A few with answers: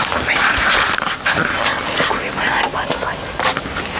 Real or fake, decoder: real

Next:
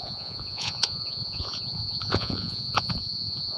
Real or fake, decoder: fake, vocoder, Vocos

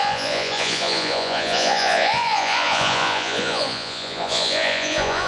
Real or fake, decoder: fake, vocoder, Vocos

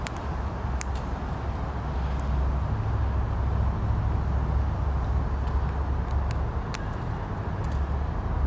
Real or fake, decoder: real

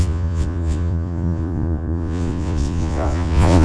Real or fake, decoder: fake, vocoder, Vocos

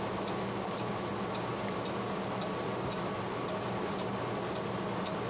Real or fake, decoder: real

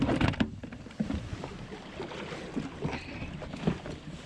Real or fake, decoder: real